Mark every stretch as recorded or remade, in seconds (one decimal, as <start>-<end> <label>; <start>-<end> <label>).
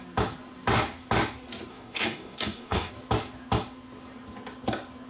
0.0-1.7 recorded; 1.7-2.9 remade; 2.9-5.1 recorded